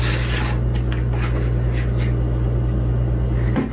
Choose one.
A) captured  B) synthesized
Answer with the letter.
A